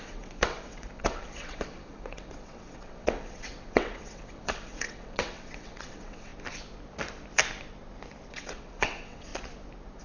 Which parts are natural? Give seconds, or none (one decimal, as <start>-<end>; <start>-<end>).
6.3-8.3; 9.3-10.0